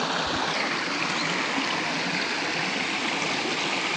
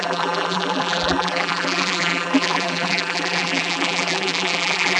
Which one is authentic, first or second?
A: first